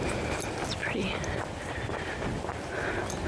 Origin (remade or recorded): recorded